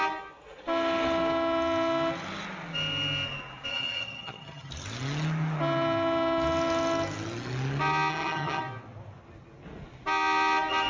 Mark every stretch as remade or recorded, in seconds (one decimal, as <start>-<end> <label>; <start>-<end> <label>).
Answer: 0.0-3.7 recorded; 3.7-4.7 remade; 4.7-8.1 recorded; 8.1-8.6 remade; 8.6-10.9 recorded

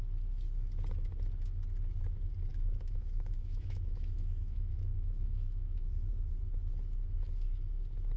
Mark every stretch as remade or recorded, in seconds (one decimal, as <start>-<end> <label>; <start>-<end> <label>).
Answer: 0.0-2.5 recorded; 2.5-6.1 remade; 6.1-8.2 recorded

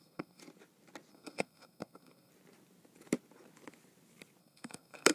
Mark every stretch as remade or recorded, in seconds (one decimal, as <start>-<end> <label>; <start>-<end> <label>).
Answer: 0.0-0.4 remade; 0.4-1.1 recorded; 1.1-2.3 remade; 2.3-4.4 recorded; 4.4-5.1 remade